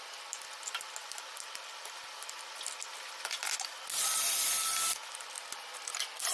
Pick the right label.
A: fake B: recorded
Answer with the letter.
B